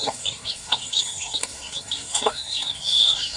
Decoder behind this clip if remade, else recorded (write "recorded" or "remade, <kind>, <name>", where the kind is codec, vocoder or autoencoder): remade, codec, SNAC